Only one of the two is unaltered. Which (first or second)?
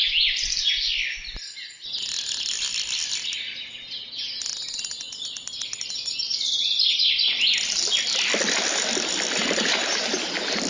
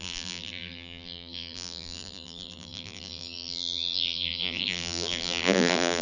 first